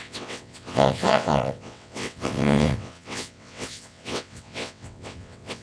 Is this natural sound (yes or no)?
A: no